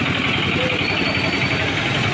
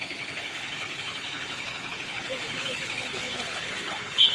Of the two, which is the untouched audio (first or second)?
first